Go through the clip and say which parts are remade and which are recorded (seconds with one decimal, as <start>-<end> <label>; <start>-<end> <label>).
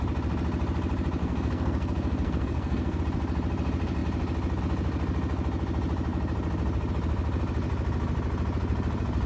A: 0.0-1.2 recorded; 1.2-3.0 remade; 3.0-9.3 recorded